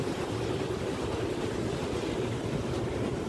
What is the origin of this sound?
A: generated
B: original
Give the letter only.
B